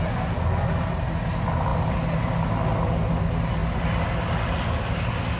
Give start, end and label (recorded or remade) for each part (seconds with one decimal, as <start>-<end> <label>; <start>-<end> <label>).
0.0-5.4 recorded